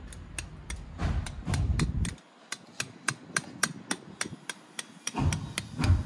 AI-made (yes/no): no